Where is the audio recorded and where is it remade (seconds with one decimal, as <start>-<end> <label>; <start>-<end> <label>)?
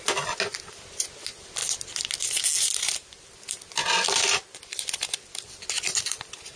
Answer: 0.0-6.6 recorded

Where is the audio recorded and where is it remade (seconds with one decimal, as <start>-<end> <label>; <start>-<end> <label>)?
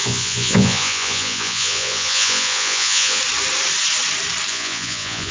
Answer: 0.0-3.2 remade; 3.2-4.5 recorded; 4.5-5.3 remade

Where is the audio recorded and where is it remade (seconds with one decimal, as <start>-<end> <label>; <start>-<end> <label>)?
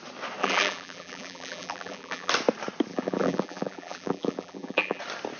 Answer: 0.0-0.4 recorded; 0.4-2.3 remade; 2.3-2.9 recorded; 2.9-5.0 remade; 5.0-5.4 recorded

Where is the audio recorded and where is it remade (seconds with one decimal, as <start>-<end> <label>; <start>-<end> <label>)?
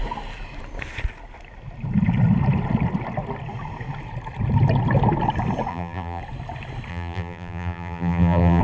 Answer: 0.0-5.7 recorded; 5.7-6.2 remade; 6.2-6.9 recorded; 6.9-8.6 remade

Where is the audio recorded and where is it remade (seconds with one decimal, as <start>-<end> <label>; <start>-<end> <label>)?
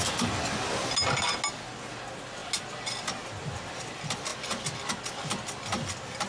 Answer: 0.0-6.3 recorded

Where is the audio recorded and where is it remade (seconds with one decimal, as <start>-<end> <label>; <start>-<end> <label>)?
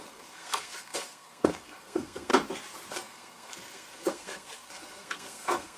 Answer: 0.0-2.3 remade; 2.3-2.9 recorded; 2.9-5.8 remade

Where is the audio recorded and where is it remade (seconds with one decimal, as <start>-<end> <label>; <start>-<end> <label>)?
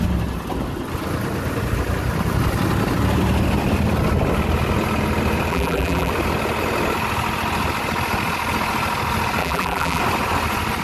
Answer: 0.0-5.5 recorded; 5.5-6.1 remade; 6.1-9.4 recorded; 9.4-10.0 remade; 10.0-10.8 recorded